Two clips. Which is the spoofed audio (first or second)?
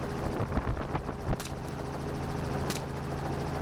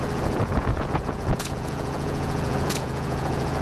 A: second